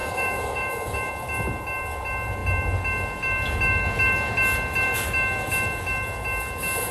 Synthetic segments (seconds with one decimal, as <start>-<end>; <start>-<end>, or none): 0.0-1.1